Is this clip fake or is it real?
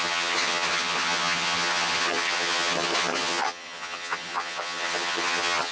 fake